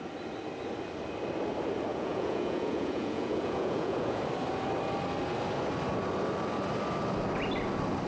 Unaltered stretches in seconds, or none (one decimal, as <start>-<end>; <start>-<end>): 0.0-1.9; 4.2-8.1